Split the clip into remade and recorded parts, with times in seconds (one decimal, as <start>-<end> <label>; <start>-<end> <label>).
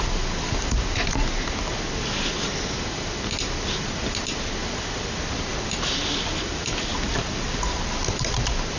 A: 0.0-8.8 recorded